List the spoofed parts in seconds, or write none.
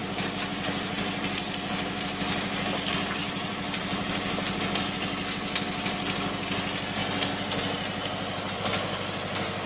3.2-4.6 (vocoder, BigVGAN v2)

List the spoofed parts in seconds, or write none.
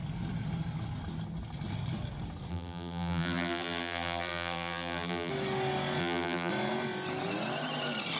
2.5-5.3 (vocoder, BigVGAN v2); 6.0-6.5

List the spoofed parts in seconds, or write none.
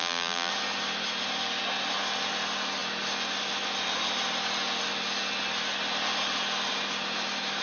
0.0-0.5 (vocoder, BigVGAN v2)